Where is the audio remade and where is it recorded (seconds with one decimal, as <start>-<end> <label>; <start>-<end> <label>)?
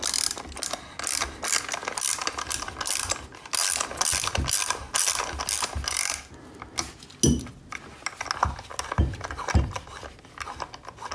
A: 0.0-11.1 recorded